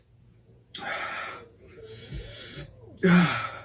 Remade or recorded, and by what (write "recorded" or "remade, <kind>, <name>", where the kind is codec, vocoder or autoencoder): remade, vocoder, Vocos